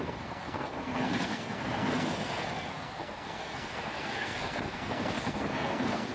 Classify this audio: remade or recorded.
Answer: remade